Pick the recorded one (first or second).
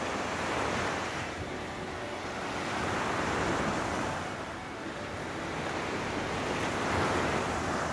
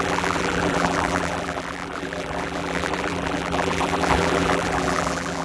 first